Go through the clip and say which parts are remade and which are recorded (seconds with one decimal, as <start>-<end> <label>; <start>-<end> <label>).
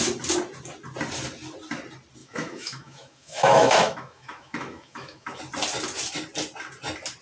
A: 0.0-2.2 recorded; 2.2-5.4 remade; 5.4-7.2 recorded